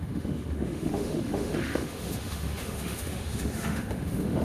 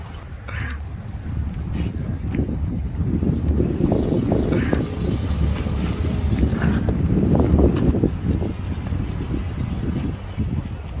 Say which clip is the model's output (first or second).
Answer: first